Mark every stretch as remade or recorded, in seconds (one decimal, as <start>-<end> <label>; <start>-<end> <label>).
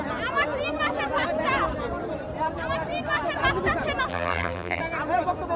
0.0-4.1 recorded; 4.1-4.8 remade; 4.8-5.6 recorded